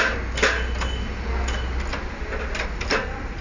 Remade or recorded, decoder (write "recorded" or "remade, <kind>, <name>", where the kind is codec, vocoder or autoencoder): recorded